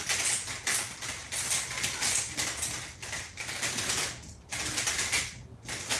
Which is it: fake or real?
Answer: real